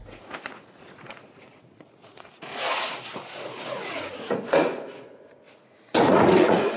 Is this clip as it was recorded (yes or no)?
no